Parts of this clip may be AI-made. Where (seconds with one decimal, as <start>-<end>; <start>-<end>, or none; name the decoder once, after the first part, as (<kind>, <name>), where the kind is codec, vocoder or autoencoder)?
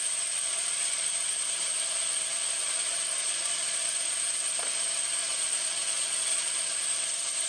0.5-1.0 (vocoder, Vocos); 3.2-3.8; 5.2-6.5